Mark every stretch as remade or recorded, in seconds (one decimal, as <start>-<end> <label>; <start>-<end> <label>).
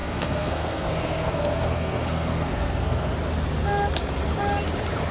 0.0-3.1 remade; 3.1-5.1 recorded